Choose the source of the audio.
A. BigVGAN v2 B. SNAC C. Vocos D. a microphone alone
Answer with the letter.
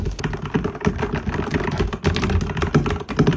D